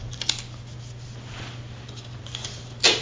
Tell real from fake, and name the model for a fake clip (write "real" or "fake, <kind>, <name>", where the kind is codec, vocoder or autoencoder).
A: real